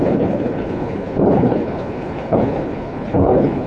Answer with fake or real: fake